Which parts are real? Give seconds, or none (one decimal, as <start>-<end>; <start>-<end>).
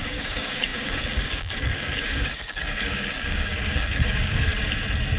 4.5-5.2